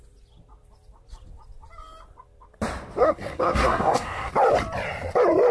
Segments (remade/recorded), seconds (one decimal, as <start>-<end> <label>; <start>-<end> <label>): 0.0-3.0 recorded; 3.0-4.3 remade; 4.3-5.5 recorded